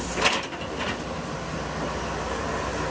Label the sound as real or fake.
real